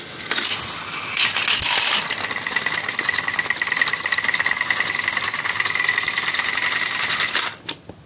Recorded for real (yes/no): yes